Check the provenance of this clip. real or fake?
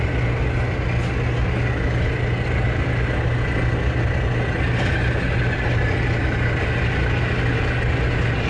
real